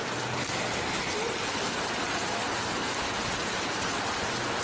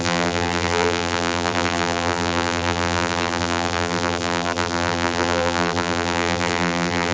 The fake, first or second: second